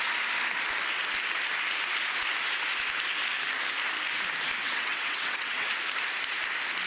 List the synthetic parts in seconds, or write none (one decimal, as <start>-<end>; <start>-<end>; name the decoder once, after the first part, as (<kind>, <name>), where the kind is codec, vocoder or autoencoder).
4.6-5.8 (vocoder, WaveNeXt)